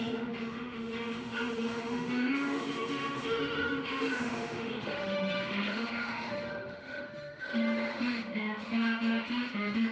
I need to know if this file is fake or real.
fake